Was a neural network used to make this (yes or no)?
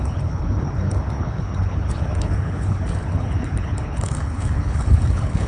yes